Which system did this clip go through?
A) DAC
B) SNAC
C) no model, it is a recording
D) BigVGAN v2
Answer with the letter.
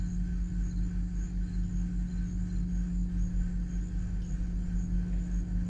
C